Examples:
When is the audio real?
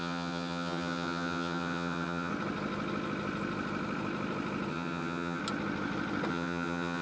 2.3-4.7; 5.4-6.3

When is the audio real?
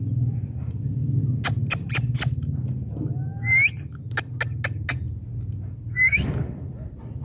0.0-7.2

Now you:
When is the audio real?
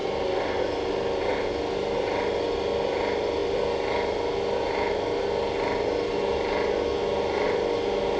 0.0-8.2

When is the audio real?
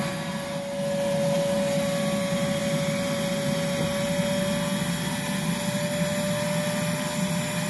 0.0-7.7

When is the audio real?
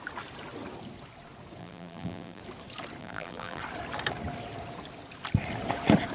0.0-1.6; 2.4-3.0; 3.6-6.1